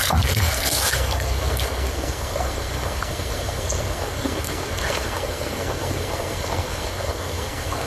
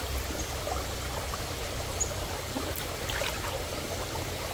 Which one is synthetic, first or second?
first